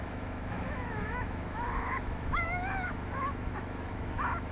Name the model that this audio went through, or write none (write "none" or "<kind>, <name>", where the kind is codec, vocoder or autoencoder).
autoencoder, DAC-VAE